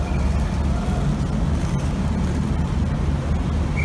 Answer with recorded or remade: recorded